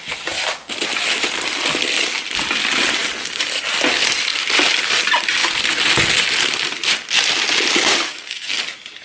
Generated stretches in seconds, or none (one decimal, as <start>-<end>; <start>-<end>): 8.1-8.6